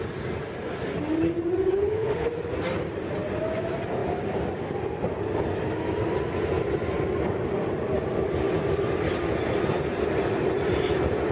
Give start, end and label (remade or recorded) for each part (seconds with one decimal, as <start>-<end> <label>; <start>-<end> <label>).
0.0-1.7 recorded; 1.7-2.3 remade; 2.3-11.3 recorded